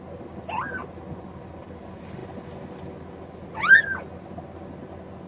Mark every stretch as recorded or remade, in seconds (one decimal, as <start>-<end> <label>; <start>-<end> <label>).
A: 0.0-5.3 recorded